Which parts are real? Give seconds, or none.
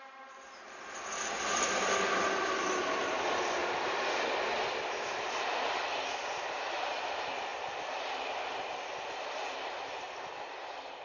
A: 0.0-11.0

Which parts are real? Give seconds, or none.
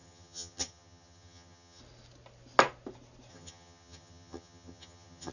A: 1.8-3.3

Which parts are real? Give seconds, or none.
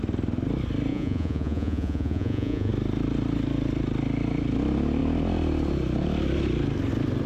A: 0.0-0.9; 2.7-7.3